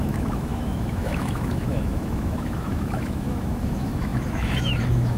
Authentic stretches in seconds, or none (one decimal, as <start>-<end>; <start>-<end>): none